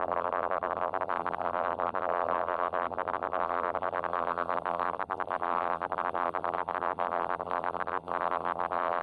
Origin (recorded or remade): remade